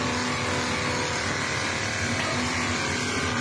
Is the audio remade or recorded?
recorded